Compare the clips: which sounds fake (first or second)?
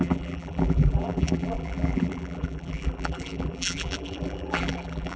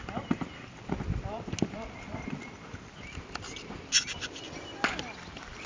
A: first